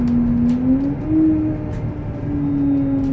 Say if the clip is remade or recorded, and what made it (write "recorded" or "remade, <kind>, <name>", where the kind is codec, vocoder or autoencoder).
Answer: recorded